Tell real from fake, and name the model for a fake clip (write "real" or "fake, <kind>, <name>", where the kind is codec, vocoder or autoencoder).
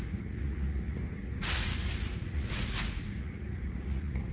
fake, vocoder, Vocos